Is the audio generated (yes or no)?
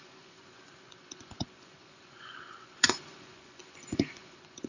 yes